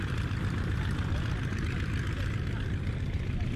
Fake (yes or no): yes